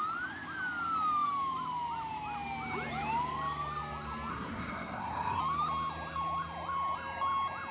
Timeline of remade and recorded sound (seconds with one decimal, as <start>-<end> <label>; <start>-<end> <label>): 0.0-4.3 recorded; 4.3-5.4 remade; 5.4-7.7 recorded